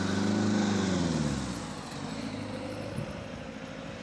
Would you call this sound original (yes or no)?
yes